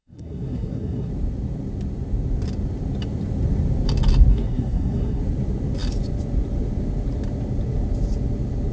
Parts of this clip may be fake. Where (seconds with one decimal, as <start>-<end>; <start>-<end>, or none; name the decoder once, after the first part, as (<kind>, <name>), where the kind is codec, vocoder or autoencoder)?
0.0-1.1 (codec, SNAC); 4.3-5.2

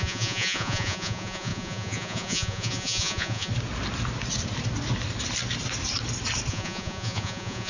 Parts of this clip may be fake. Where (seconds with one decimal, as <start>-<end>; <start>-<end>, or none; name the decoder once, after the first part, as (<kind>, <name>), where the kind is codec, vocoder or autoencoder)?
0.0-3.5 (vocoder, Vocos); 6.5-7.7

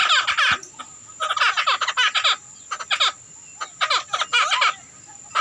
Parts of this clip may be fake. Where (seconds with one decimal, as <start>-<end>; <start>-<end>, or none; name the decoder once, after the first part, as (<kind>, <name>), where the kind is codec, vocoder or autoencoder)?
none